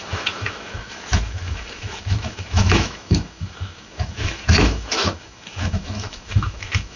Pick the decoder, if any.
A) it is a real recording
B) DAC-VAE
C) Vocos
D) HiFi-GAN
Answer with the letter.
B